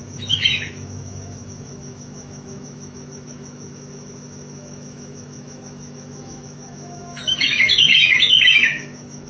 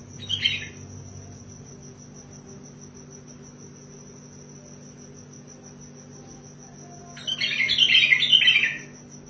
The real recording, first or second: second